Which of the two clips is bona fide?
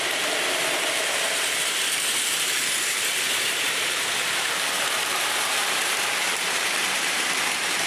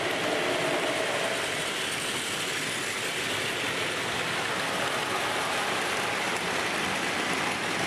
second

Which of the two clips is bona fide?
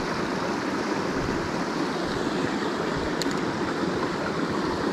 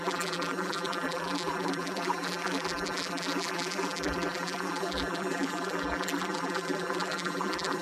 first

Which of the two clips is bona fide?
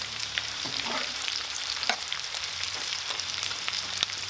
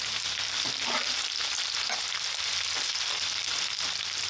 second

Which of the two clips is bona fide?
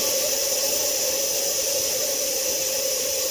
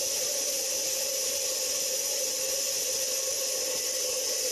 second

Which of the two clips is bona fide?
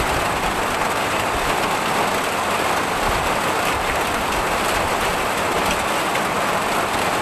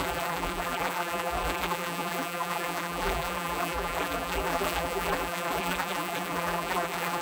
first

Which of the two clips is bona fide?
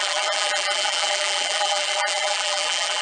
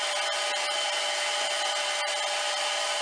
second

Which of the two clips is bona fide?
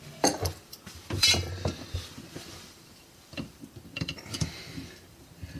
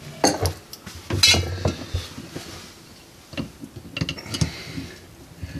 second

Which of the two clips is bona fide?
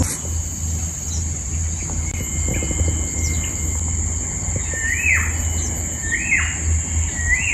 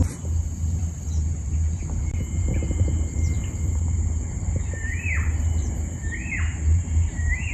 first